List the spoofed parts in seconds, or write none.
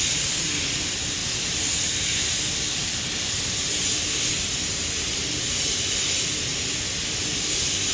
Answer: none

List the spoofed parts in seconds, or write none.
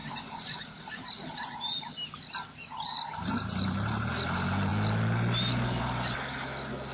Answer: none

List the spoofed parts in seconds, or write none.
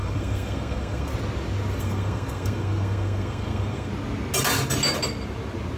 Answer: 0.0-1.1 (codec, SNAC); 1.8-3.9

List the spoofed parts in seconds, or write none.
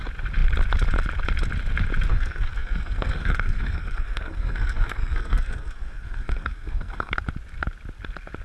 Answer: 2.1-7.1 (codec, SNAC)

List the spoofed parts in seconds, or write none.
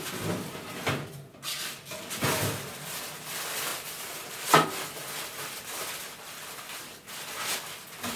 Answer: 3.7-4.3 (vocoder, BigVGAN v2)